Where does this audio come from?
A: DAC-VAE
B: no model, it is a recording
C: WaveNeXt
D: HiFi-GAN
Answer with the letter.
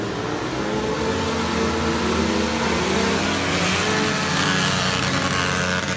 B